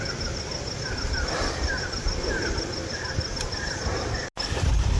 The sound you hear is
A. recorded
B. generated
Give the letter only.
A